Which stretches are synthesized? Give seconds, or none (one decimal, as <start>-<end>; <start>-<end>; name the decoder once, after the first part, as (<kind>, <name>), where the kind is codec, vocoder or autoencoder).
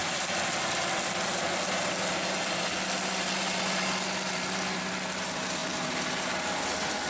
none